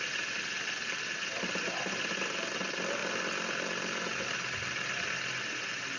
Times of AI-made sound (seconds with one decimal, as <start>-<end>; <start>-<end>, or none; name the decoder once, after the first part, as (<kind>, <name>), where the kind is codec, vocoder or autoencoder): none